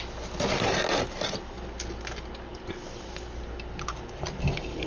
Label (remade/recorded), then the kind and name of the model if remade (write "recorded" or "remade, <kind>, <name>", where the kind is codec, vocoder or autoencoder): recorded